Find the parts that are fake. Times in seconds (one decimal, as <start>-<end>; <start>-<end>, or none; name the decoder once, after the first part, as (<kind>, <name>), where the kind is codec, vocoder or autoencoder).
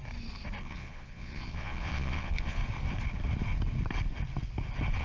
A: 0.6-2.6 (vocoder, Vocos)